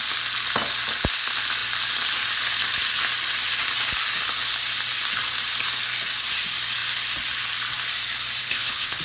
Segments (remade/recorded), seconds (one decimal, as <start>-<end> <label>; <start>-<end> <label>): 0.0-8.4 recorded; 8.4-9.0 remade